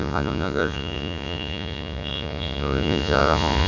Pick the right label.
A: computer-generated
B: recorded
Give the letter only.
A